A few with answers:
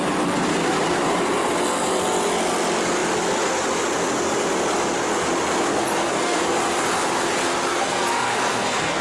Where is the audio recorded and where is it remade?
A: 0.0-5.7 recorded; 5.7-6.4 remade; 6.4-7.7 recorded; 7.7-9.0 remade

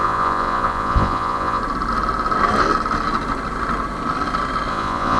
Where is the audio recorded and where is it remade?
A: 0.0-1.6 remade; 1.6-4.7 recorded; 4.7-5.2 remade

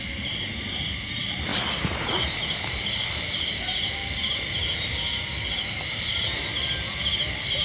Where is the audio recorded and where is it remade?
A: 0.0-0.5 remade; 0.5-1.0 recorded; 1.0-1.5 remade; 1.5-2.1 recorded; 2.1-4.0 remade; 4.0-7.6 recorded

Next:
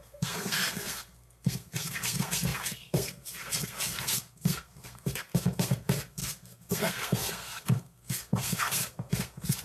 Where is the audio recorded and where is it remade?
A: 0.0-9.6 remade

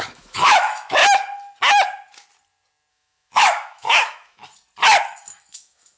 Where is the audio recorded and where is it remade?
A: 0.0-1.0 remade; 1.0-2.9 recorded; 2.9-4.4 remade; 4.4-5.0 recorded; 5.0-6.0 remade

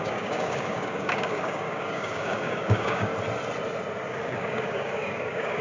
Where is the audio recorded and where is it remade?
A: 0.0-3.1 remade; 3.1-4.1 recorded; 4.1-5.6 remade

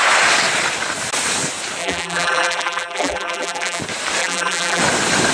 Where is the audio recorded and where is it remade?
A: 0.0-1.8 recorded; 1.8-3.8 remade; 3.8-4.2 recorded; 4.2-4.8 remade; 4.8-5.3 recorded